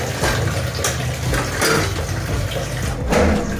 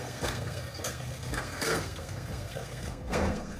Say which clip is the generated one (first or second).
second